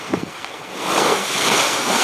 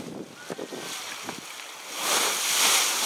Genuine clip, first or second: second